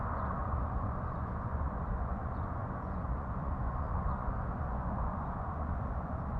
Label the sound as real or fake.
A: fake